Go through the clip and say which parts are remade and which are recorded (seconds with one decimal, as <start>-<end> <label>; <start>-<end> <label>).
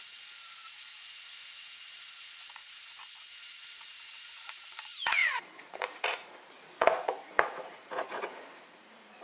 0.0-2.6 remade; 2.6-3.3 recorded; 3.3-9.2 remade